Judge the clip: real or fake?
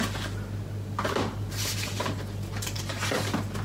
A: real